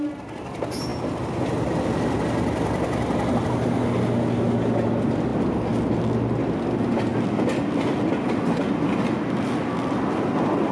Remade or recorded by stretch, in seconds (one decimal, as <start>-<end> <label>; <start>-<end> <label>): 0.0-10.7 recorded